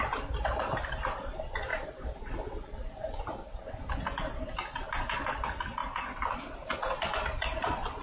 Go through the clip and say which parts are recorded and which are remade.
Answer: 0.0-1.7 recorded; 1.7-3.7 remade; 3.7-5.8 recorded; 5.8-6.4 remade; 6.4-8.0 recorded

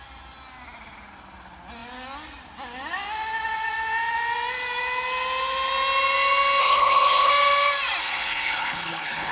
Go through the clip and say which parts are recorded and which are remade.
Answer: 0.0-6.6 recorded; 6.6-7.3 remade; 7.3-8.0 recorded; 8.0-9.3 remade

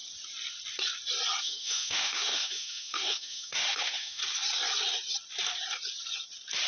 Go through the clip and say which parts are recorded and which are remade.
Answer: 0.0-1.4 recorded; 1.4-4.2 remade; 4.2-6.7 recorded